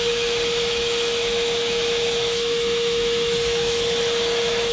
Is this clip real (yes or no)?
no